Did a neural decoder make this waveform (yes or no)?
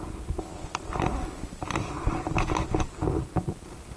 no